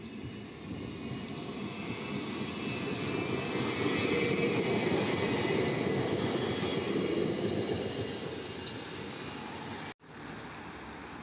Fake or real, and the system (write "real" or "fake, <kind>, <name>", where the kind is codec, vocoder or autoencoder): real